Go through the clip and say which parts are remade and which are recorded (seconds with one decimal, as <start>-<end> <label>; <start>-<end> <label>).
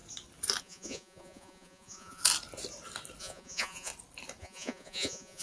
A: 0.0-0.6 recorded; 0.6-2.2 remade; 2.2-3.2 recorded; 3.2-3.9 remade; 3.9-4.4 recorded; 4.4-5.4 remade